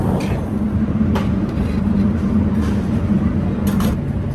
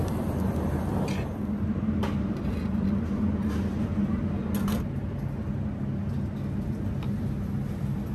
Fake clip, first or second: first